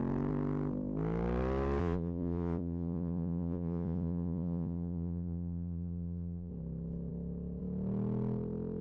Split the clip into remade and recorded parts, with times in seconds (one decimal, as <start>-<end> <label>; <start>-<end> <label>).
0.0-1.8 recorded; 1.8-6.5 remade; 6.5-8.8 recorded